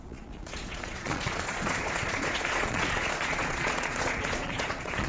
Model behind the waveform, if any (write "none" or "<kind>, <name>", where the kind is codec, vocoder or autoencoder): vocoder, Vocos